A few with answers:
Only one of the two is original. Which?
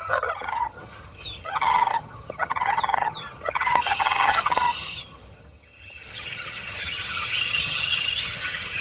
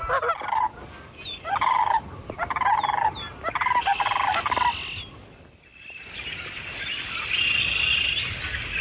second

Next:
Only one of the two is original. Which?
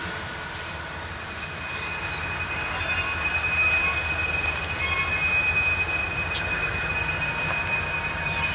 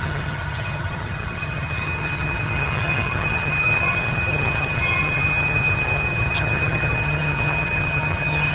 first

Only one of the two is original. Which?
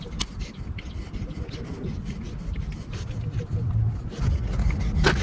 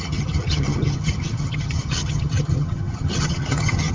first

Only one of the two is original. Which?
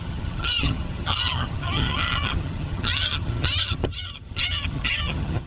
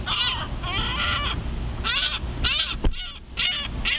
second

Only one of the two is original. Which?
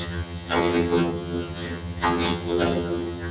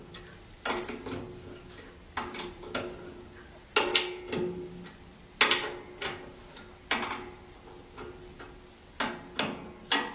second